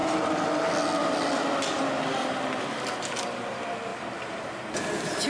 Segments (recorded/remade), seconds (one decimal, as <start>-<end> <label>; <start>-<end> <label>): 0.0-3.9 recorded; 3.9-4.5 remade; 4.5-5.3 recorded